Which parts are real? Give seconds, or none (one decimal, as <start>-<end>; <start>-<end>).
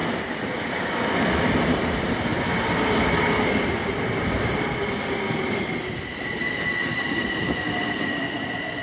2.3-5.4